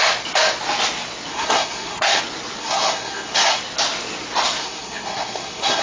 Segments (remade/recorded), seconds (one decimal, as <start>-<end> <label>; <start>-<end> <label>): 0.0-1.3 recorded; 1.3-2.2 remade; 2.2-2.6 recorded; 2.6-3.6 remade; 3.6-4.6 recorded; 4.6-5.8 remade